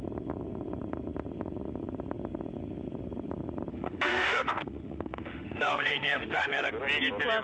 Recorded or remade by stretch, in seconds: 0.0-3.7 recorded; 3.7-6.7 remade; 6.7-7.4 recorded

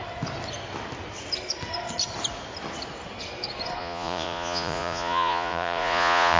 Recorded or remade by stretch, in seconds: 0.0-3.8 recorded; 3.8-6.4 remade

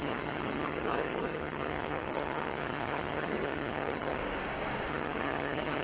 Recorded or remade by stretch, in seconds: 0.0-4.2 remade; 4.2-4.9 recorded; 4.9-5.8 remade